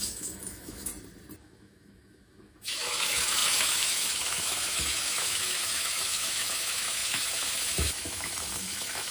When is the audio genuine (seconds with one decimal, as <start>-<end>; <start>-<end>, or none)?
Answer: 0.9-1.4